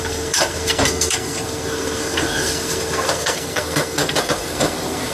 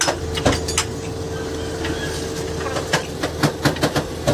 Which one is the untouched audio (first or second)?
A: second